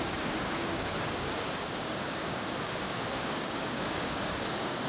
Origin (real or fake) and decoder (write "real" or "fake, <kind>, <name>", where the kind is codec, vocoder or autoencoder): fake, codec, DAC